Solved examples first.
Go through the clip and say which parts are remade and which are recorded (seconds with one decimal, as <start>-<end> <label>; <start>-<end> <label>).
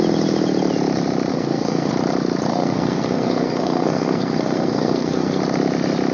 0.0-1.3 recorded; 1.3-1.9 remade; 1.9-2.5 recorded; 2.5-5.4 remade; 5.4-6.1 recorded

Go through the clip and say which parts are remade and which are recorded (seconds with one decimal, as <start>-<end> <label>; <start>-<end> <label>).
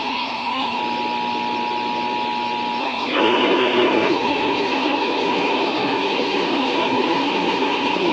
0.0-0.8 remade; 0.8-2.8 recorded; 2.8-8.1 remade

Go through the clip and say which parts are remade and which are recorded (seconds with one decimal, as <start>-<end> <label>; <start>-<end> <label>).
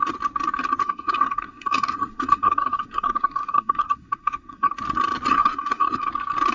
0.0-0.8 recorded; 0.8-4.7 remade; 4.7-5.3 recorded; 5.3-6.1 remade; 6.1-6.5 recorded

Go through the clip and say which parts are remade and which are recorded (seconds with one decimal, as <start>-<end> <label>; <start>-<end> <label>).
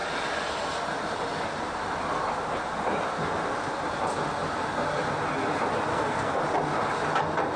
0.0-5.9 recorded; 5.9-6.4 remade; 6.4-7.6 recorded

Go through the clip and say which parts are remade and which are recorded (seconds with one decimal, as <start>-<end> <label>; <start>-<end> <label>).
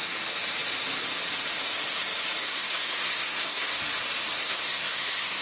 0.0-2.4 recorded; 2.4-3.8 remade; 3.8-4.4 recorded; 4.4-5.4 remade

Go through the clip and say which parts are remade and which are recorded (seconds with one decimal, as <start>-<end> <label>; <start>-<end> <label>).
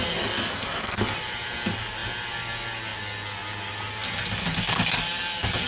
0.0-0.4 recorded; 0.4-1.0 remade; 1.0-5.7 recorded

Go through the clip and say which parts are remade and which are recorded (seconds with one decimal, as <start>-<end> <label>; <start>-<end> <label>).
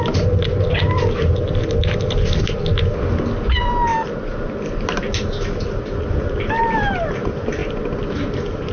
0.0-8.7 recorded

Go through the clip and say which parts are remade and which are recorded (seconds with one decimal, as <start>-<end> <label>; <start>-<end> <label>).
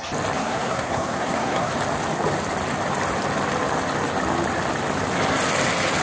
0.0-0.4 recorded; 0.4-1.7 remade; 1.7-6.0 recorded